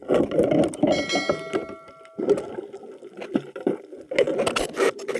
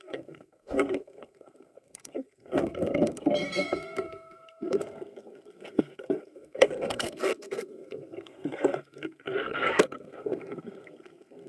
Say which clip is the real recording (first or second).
first